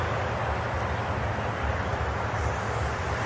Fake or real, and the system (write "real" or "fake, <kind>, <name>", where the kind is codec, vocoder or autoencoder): real